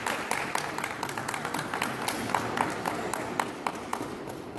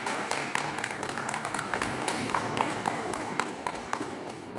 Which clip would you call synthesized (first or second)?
second